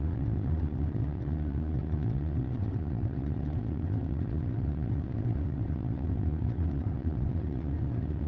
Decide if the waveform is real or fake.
fake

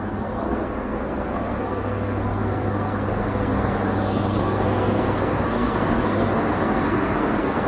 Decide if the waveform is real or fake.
fake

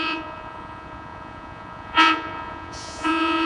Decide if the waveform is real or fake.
fake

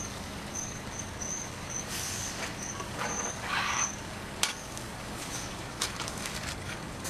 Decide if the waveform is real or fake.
fake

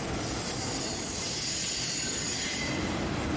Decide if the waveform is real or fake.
real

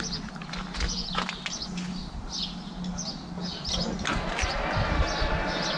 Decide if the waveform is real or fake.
real